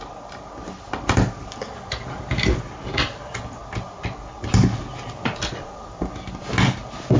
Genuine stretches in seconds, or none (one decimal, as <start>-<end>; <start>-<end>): 0.0-7.2